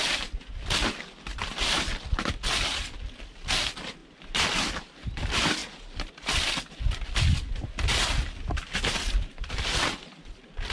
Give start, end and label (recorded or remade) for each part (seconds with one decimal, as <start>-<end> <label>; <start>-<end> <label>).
0.0-5.6 recorded; 5.6-6.1 remade; 6.1-10.7 recorded